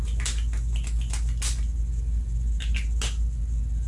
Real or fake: real